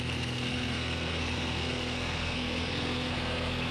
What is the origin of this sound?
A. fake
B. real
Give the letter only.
A